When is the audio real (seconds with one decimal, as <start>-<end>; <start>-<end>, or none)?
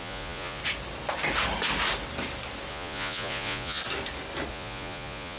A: 0.6-2.7; 3.8-4.5